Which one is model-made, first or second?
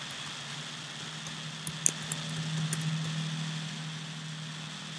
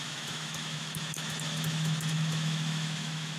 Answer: second